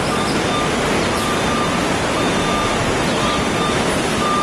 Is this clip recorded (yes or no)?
yes